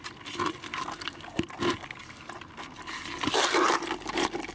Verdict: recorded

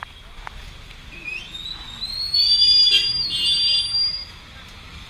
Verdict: recorded